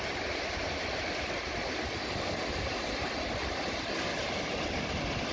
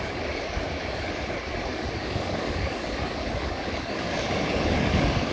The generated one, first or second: second